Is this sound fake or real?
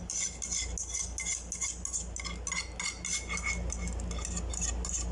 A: real